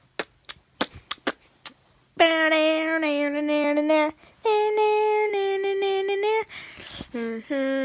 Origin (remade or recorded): recorded